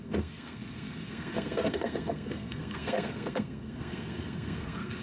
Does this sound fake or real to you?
fake